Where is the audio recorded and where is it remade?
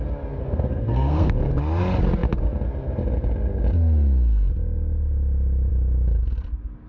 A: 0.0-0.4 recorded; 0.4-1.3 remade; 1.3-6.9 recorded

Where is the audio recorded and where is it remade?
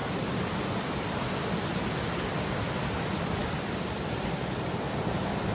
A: 0.0-1.3 remade; 1.3-3.4 recorded; 3.4-4.2 remade; 4.2-5.5 recorded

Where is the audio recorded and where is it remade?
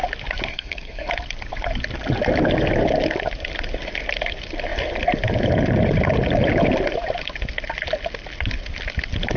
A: 0.0-0.5 recorded; 0.5-1.1 remade; 1.1-9.4 recorded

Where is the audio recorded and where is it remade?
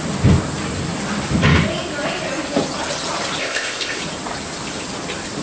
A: 0.0-3.4 recorded; 3.4-4.0 remade; 4.0-5.4 recorded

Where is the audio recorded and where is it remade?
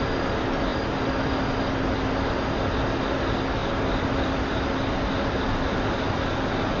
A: 0.0-6.8 recorded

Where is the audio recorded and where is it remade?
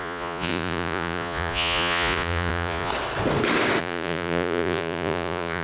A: 0.0-2.9 remade; 2.9-3.8 recorded; 3.8-5.6 remade